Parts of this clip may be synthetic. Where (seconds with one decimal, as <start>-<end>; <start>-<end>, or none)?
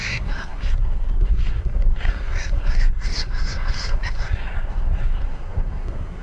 0.0-6.2